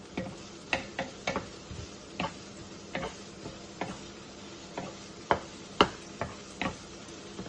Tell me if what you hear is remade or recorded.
remade